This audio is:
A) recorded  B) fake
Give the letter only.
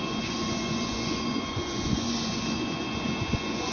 B